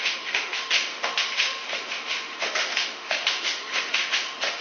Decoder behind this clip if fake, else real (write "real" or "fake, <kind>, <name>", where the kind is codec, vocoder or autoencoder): fake, autoencoder, DAC-VAE